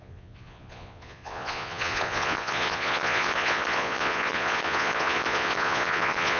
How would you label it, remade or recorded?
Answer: remade